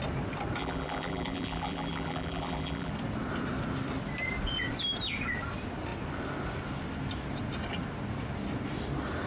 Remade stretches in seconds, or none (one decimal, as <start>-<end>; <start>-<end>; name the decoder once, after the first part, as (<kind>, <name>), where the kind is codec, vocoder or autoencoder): 0.6-2.9 (vocoder, BigVGAN v2)